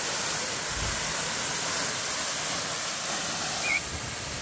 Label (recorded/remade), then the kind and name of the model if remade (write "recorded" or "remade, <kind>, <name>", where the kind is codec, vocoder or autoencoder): recorded